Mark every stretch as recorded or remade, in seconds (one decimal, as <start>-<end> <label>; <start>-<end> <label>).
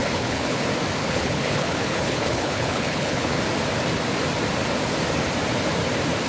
0.0-0.6 remade; 0.6-1.0 recorded; 1.0-3.4 remade; 3.4-6.3 recorded